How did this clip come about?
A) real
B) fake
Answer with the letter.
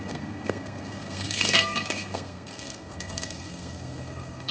B